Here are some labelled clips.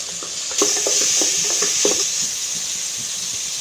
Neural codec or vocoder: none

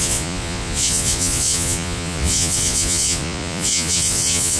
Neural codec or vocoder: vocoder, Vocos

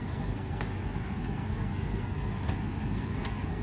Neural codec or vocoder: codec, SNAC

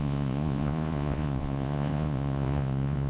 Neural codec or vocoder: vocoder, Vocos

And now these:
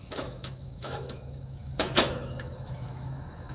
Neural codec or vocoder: autoencoder, DAC-VAE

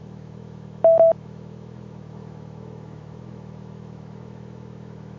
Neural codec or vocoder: autoencoder, DAC-VAE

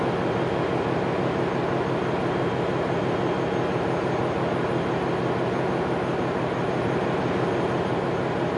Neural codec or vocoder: none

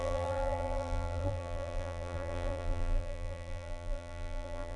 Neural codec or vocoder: vocoder, BigVGAN v2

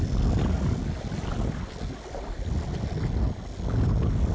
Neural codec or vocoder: none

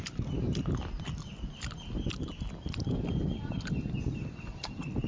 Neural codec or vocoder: none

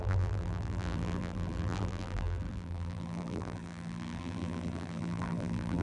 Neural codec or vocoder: vocoder, BigVGAN v2